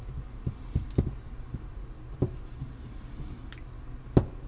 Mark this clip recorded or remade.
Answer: recorded